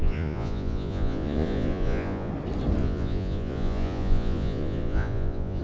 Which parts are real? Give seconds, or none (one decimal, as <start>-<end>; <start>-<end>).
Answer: 2.3-2.8